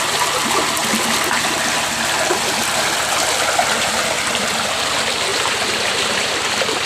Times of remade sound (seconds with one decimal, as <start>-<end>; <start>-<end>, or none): 5.3-6.9